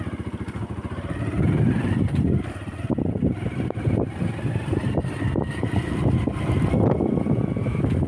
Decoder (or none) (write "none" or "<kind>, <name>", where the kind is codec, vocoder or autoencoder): none